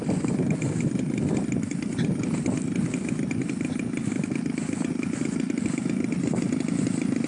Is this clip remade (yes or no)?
no